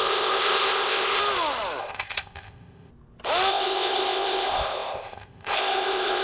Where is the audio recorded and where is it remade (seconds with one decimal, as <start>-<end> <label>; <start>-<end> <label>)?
0.0-1.2 remade; 1.2-1.8 recorded; 1.8-2.9 remade; 2.9-3.5 recorded; 3.5-6.2 remade